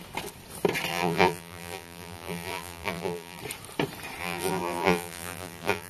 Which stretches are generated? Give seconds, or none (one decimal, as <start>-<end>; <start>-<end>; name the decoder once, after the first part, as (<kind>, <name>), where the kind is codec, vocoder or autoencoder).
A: 0.9-3.4 (vocoder, BigVGAN v2); 4.2-5.9